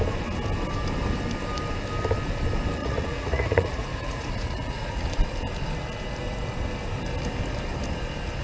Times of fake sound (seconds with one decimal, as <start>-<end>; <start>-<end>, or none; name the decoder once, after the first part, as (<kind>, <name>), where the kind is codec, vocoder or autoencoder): 2.8-5.1 (vocoder, Vocos)